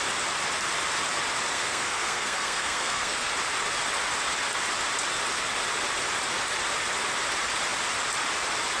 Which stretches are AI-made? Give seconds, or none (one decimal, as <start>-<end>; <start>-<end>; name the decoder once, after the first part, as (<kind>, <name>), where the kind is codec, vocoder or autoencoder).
1.5-3.3 (codec, SNAC)